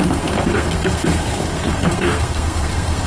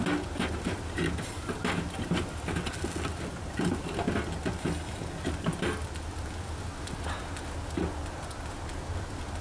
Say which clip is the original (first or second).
second